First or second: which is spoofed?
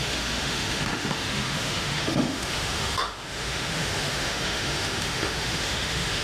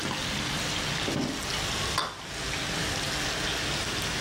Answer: first